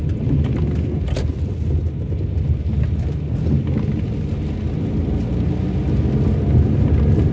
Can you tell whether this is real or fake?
real